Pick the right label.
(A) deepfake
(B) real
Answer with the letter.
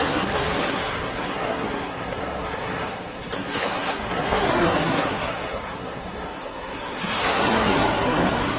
A